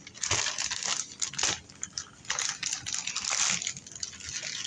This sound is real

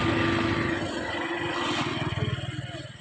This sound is real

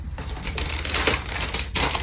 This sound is real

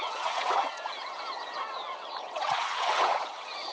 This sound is fake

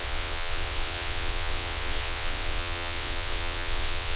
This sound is fake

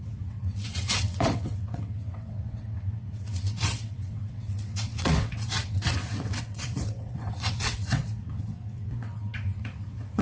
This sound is fake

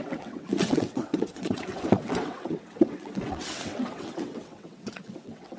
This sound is fake